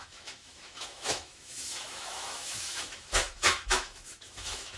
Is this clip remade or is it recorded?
remade